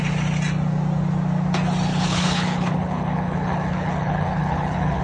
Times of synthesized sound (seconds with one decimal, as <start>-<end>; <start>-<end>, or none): 1.9-5.0